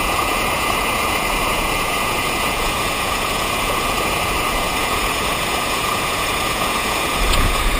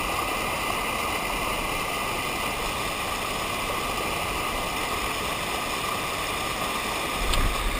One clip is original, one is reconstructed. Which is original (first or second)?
second